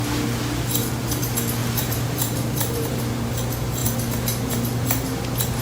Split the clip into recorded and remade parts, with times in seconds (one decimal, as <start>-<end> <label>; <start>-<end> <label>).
0.0-1.6 recorded; 1.6-3.0 remade; 3.0-5.6 recorded